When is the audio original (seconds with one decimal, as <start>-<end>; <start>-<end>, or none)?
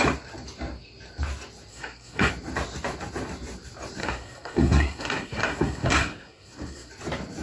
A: 0.0-1.7; 2.3-4.0; 6.9-7.4